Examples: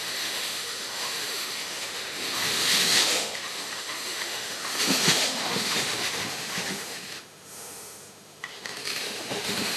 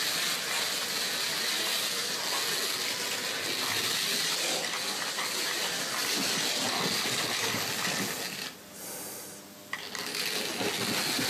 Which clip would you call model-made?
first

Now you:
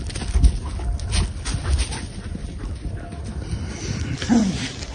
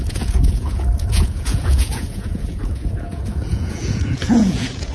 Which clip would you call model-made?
second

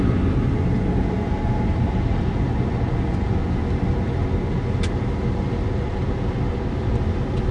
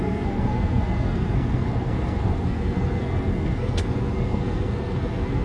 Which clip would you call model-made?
second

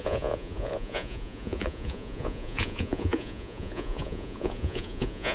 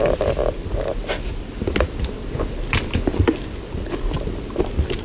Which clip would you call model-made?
first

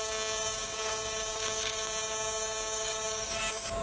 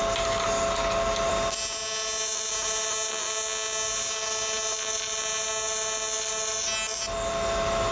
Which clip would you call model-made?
first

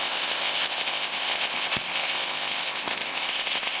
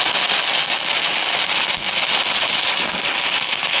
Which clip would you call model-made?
first